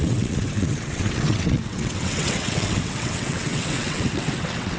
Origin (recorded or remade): remade